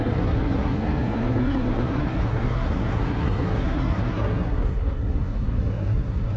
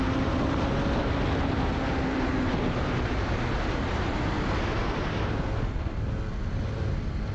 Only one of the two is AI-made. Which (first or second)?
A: first